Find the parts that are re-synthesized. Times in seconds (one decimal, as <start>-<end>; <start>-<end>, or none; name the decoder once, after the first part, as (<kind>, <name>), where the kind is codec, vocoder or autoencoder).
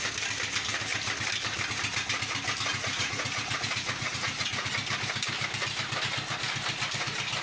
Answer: 2.7-4.7 (vocoder, Vocos)